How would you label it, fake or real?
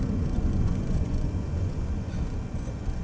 fake